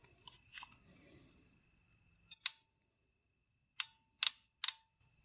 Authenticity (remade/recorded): recorded